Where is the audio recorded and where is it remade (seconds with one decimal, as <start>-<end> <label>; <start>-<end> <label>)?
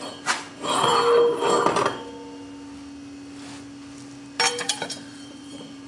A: 0.0-0.9 remade; 0.9-4.4 recorded; 4.4-5.9 remade